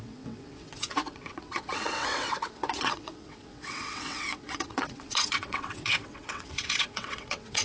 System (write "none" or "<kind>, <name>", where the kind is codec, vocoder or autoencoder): vocoder, WaveNeXt